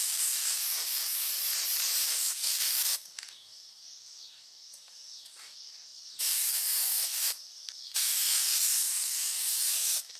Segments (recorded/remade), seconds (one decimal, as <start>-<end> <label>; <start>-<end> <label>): 0.0-1.3 remade; 1.3-2.0 recorded; 2.0-10.2 remade